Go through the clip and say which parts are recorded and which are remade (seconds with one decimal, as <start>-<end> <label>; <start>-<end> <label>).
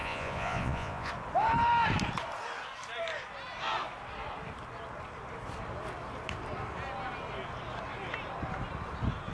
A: 0.0-1.1 remade; 1.1-9.3 recorded